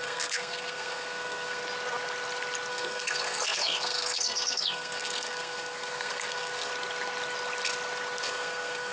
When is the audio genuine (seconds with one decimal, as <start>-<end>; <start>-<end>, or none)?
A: 1.6-2.7; 6.7-8.2